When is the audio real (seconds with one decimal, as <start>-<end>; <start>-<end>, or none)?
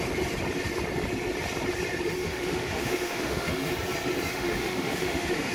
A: 0.0-2.2; 3.7-4.3